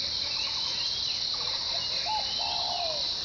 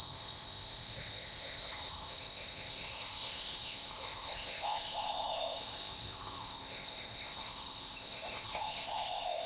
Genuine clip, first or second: first